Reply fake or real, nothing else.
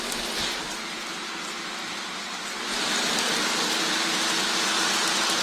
real